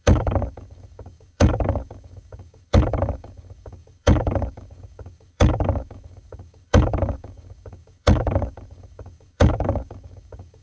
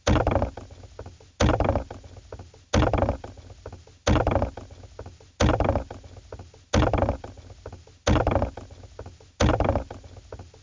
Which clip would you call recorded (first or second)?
second